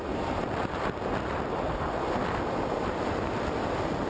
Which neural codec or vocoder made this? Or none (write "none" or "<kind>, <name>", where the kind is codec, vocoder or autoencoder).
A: none